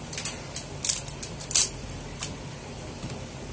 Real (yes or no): yes